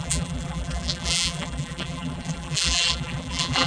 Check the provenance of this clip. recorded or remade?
remade